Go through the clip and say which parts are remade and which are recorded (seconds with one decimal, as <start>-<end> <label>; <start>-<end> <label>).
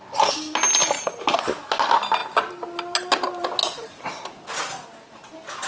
0.0-5.7 recorded